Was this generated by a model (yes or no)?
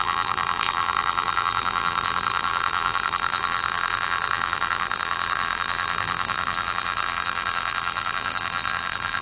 yes